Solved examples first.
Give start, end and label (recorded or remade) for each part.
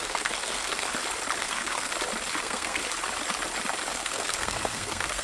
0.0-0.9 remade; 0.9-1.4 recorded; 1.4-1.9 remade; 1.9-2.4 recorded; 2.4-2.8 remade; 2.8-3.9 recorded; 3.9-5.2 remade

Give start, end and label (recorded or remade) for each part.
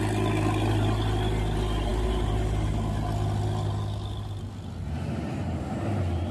0.0-6.3 recorded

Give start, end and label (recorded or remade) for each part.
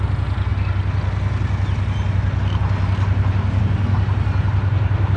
0.0-5.2 recorded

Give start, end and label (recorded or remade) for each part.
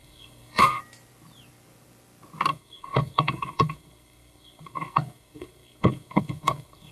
0.0-0.8 remade; 0.8-2.5 recorded; 2.5-6.9 remade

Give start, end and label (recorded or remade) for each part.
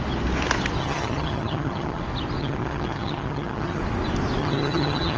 0.0-0.8 recorded; 0.8-2.0 remade; 2.0-2.4 recorded; 2.4-3.8 remade; 3.8-4.4 recorded; 4.4-5.2 remade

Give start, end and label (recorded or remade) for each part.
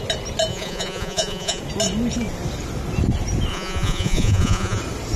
0.0-0.5 recorded; 0.5-1.6 remade; 1.6-3.5 recorded; 3.5-4.8 remade; 4.8-5.2 recorded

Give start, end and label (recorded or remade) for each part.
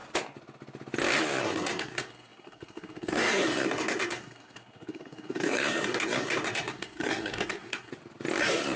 0.0-1.4 recorded; 1.4-7.9 remade; 7.9-8.4 recorded; 8.4-8.8 remade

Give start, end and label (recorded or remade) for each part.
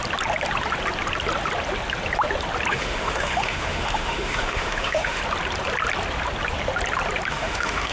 0.0-2.7 recorded; 2.7-5.2 remade; 5.2-7.3 recorded; 7.3-7.9 remade